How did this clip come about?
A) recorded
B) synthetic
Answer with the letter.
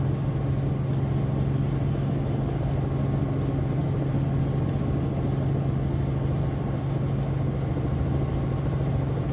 A